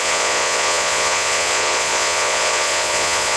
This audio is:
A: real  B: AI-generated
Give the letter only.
B